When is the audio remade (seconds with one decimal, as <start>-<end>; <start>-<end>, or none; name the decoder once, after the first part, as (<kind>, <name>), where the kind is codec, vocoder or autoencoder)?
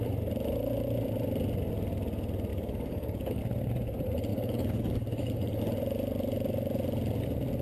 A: 2.5-3.4 (codec, DAC); 4.3-5.6